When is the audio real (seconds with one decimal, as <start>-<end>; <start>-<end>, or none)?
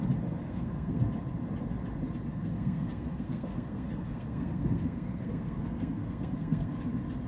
0.0-0.4; 1.1-2.3; 6.7-7.3